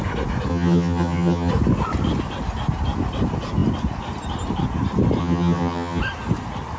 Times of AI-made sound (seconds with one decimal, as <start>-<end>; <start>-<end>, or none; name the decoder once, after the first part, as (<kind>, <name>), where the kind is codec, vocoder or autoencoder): 0.5-1.5 (vocoder, HiFi-GAN); 5.2-6.0